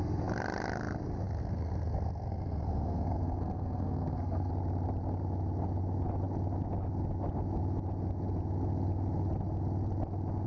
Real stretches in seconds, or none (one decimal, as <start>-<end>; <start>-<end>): 0.0-1.4; 4.5-10.5